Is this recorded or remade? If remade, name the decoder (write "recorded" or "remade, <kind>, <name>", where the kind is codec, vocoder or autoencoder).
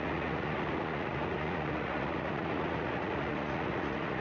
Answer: remade, vocoder, Vocos